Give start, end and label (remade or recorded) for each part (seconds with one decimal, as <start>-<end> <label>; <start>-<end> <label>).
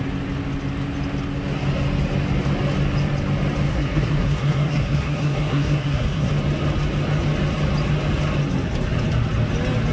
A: 0.0-3.7 recorded; 3.7-6.3 remade; 6.3-9.9 recorded